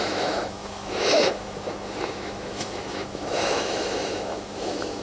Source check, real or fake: fake